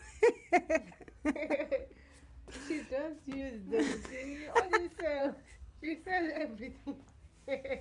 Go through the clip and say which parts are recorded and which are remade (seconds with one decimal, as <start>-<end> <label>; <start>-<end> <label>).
0.0-3.9 recorded; 3.9-4.7 remade; 4.7-5.2 recorded; 5.2-6.4 remade; 6.4-7.8 recorded